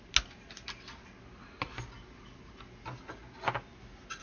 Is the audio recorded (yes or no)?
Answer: yes